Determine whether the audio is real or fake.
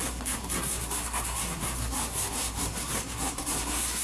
fake